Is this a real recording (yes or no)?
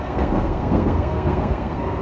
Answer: no